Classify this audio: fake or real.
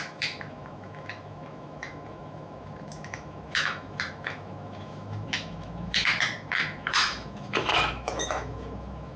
fake